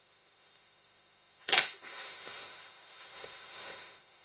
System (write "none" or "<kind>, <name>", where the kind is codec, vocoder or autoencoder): autoencoder, DAC-VAE